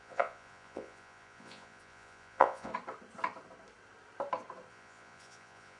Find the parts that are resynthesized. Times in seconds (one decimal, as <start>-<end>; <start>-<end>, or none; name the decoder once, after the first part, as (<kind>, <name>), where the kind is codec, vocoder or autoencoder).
0.0-2.7 (vocoder, Vocos); 4.7-5.8